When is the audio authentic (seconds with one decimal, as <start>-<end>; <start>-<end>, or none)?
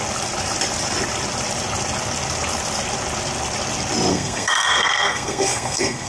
0.0-4.1